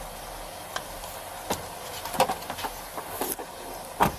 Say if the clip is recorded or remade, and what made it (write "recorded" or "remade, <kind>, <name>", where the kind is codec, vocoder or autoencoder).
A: recorded